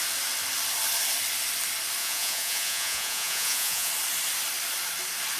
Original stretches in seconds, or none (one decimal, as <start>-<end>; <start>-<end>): 0.0-2.0; 3.9-5.4